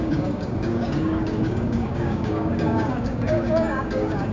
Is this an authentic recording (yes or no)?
no